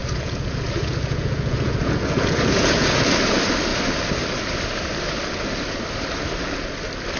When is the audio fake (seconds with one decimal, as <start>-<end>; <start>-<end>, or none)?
0.0-3.0